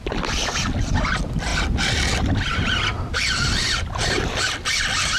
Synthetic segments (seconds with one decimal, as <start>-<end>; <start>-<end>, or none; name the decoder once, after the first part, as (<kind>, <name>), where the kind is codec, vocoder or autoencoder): 2.9-4.0 (vocoder, BigVGAN v2)